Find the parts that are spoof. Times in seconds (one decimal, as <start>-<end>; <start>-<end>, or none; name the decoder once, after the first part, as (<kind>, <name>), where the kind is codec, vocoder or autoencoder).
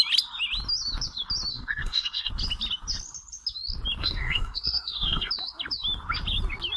1.5-2.3 (codec, SNAC); 4.0-5.3